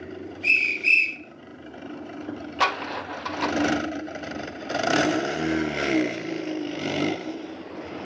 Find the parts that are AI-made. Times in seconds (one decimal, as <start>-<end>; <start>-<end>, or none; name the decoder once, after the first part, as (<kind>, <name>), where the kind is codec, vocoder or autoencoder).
0.0-1.5 (vocoder, BigVGAN v2); 3.8-8.0